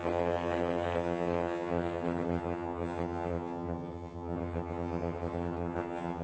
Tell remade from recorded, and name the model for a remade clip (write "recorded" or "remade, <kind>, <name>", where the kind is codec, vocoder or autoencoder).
remade, vocoder, HiFi-GAN